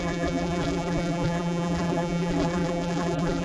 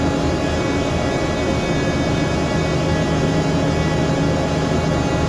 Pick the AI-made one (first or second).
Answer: first